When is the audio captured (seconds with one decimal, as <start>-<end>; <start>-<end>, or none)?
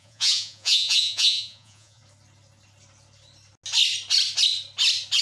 2.0-5.2